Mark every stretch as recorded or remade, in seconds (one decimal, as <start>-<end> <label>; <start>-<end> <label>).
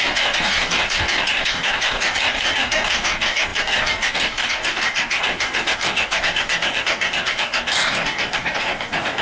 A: 0.0-9.2 remade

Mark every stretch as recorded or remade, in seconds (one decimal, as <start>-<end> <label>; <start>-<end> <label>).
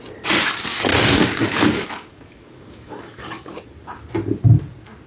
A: 0.0-0.9 recorded; 0.9-3.6 remade; 3.6-5.1 recorded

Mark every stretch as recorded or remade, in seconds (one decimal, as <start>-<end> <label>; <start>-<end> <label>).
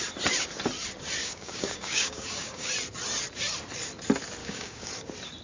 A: 0.0-1.2 recorded; 1.2-2.7 remade; 2.7-4.4 recorded; 4.4-4.9 remade; 4.9-5.4 recorded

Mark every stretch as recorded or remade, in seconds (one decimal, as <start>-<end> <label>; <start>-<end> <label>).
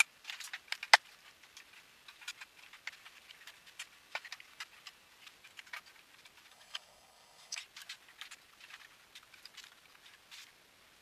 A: 0.0-6.5 recorded; 6.5-7.6 remade; 7.6-11.0 recorded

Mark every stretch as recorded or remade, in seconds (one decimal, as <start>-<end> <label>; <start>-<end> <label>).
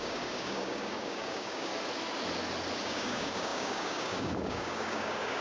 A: 0.0-1.7 remade; 1.7-2.8 recorded; 2.8-5.4 remade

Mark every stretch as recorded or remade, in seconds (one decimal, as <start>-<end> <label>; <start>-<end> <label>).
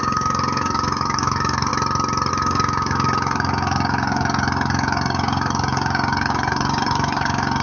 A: 0.0-1.7 remade; 1.7-2.3 recorded; 2.3-7.6 remade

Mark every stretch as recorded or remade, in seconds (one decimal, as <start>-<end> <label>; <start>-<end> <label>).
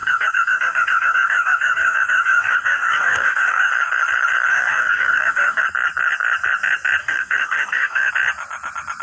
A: 0.0-3.7 remade; 3.7-4.5 recorded; 4.5-5.6 remade; 5.6-7.0 recorded; 7.0-8.1 remade; 8.1-9.0 recorded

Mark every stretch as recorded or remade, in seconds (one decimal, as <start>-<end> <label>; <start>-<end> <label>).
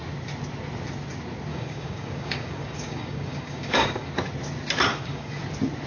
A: 0.0-1.5 recorded; 1.5-4.1 remade; 4.1-4.9 recorded; 4.9-5.4 remade; 5.4-5.9 recorded